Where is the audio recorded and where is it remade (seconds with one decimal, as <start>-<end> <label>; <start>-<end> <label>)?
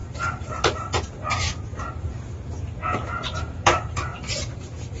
0.0-0.6 recorded; 0.6-1.7 remade; 1.7-3.4 recorded; 3.4-4.1 remade; 4.1-5.0 recorded